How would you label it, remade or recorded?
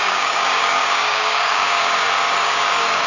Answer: remade